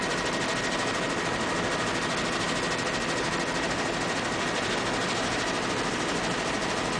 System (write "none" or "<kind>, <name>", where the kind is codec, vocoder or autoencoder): none